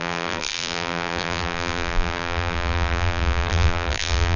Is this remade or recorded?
remade